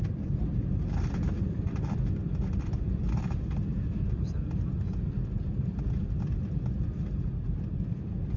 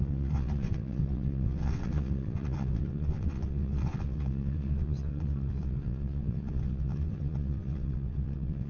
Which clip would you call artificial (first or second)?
second